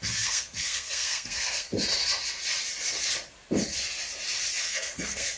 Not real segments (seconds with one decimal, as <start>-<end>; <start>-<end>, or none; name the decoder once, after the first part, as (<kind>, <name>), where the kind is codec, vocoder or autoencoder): 0.0-1.7 (codec, SNAC); 4.6-5.4